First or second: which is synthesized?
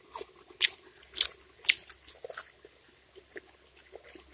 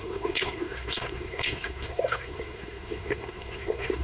second